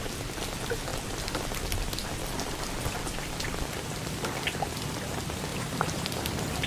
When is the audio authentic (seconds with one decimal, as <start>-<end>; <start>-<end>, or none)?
0.0-5.5; 6.3-6.7